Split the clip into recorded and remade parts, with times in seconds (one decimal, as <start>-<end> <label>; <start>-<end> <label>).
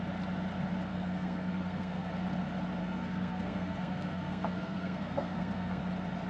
0.0-0.9 recorded; 0.9-2.1 remade; 2.1-2.8 recorded; 2.8-5.8 remade; 5.8-6.3 recorded